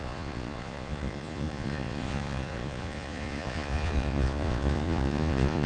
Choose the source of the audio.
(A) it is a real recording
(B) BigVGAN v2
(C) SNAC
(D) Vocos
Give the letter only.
D